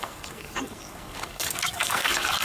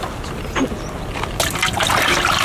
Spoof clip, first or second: first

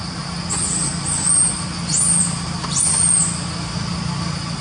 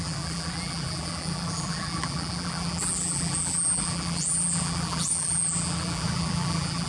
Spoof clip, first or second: second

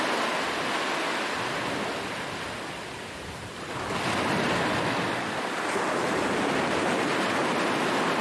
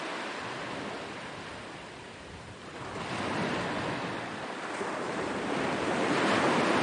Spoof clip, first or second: second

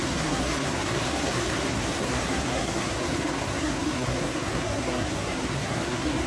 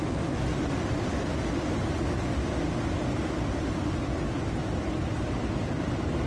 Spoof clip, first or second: first